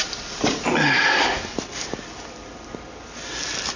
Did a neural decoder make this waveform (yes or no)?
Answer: no